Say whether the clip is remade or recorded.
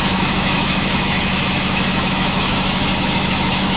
remade